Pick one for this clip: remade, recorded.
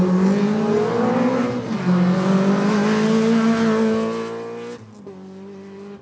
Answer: recorded